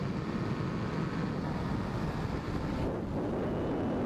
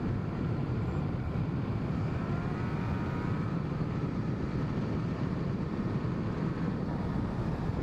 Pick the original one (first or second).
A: first